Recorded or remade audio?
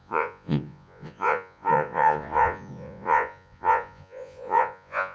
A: remade